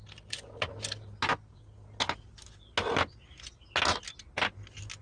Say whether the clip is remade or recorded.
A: recorded